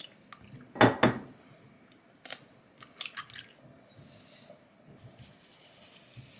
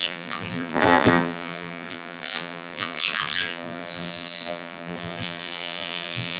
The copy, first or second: second